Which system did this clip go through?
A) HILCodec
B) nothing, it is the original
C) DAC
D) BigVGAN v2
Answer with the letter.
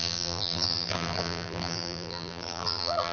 D